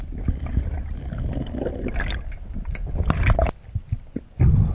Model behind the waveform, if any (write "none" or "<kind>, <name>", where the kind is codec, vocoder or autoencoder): none